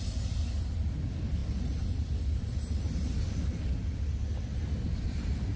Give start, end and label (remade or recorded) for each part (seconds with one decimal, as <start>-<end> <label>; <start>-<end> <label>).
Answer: 0.0-1.4 recorded; 1.4-3.7 remade; 3.7-4.6 recorded; 4.6-5.6 remade